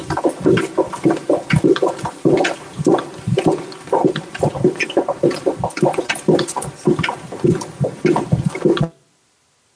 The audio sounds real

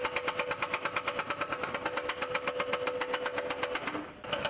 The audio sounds real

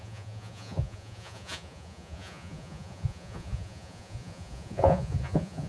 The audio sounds fake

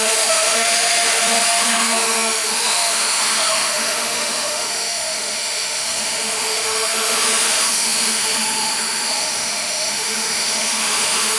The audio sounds fake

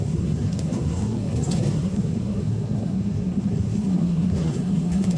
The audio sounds fake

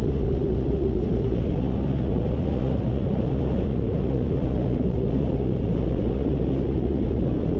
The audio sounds fake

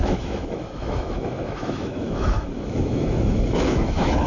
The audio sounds fake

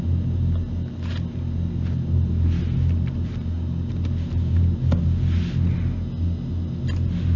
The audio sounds real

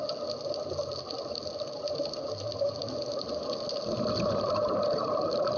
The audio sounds real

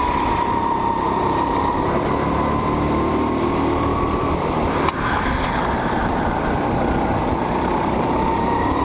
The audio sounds fake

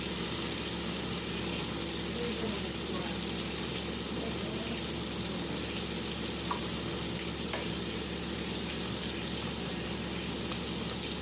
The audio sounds real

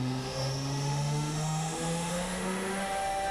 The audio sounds fake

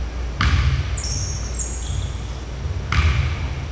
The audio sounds real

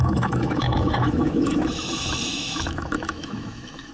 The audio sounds fake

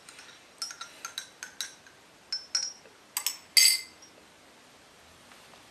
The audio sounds real